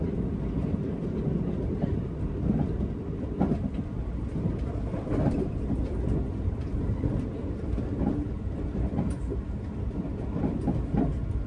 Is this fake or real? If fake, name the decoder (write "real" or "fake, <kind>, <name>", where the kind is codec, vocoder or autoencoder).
fake, vocoder, BigVGAN v2